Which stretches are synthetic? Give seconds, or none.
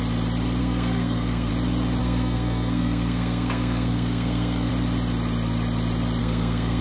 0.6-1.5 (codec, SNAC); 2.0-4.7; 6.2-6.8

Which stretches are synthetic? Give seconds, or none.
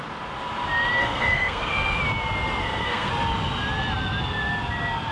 1.0-2.0 (codec, SNAC); 2.6-3.1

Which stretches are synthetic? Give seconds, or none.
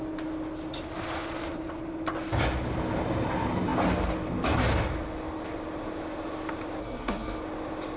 6.8-7.4 (codec, SNAC)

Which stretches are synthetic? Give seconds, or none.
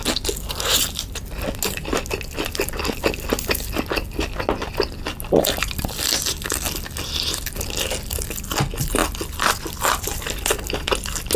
none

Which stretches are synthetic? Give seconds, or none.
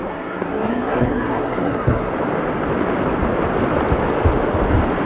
0.0-2.1 (codec, SNAC)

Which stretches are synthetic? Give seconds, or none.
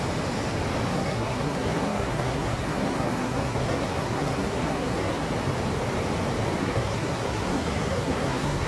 0.9-5.3 (codec, SNAC); 6.6-8.7